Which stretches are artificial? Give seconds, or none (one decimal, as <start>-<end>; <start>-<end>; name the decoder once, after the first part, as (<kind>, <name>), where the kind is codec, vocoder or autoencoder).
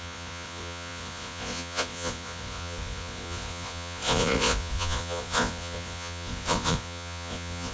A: 0.0-7.7 (vocoder, Vocos)